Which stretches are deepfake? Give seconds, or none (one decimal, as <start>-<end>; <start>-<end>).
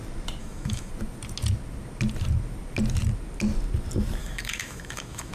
0.4-0.9; 4.2-5.3